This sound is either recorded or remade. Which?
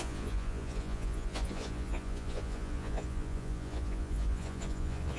remade